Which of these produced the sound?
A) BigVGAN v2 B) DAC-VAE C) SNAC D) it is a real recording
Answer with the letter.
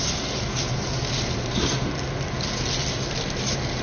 D